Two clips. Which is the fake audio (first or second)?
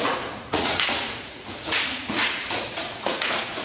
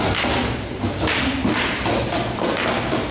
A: first